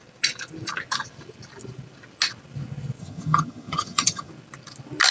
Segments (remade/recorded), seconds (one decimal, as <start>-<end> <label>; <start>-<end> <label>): 0.0-3.0 recorded; 3.0-4.3 remade; 4.3-5.1 recorded